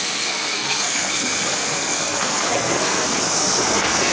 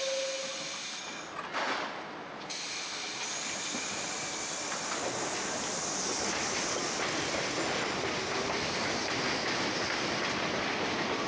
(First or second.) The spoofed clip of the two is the first